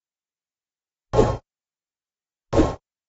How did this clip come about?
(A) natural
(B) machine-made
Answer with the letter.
A